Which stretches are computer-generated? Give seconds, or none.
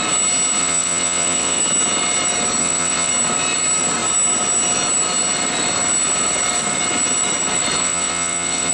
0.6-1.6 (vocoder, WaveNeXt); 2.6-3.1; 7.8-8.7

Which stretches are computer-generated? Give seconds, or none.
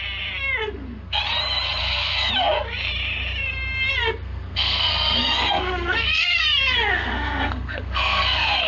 0.6-1.2 (codec, SNAC); 1.8-2.3; 3.9-8.7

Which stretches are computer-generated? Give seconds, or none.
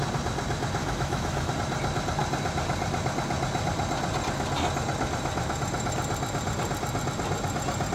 0.8-1.5 (autoencoder, DAC-VAE)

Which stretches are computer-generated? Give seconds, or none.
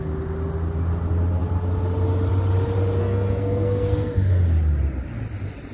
3.0-4.4 (codec, SNAC)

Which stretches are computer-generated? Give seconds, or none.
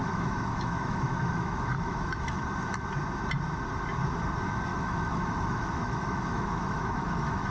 0.0-2.4 (autoencoder, DAC-VAE); 4.7-7.5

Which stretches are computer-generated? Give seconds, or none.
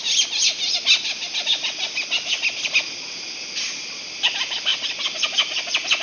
none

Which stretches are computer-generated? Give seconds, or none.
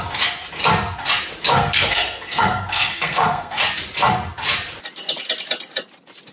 1.5-3.6 (codec, SNAC)